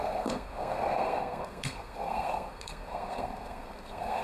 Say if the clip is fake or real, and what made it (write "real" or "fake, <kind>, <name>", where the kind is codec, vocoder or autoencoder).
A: fake, codec, SNAC